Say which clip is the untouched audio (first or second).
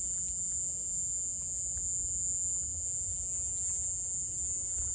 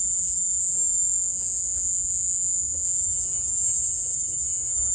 first